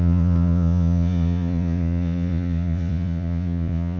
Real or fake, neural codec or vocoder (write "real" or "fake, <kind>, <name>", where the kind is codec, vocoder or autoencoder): fake, vocoder, Vocos